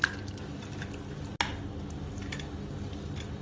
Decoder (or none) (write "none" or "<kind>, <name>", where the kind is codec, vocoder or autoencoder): none